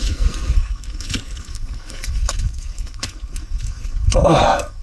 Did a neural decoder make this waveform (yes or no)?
yes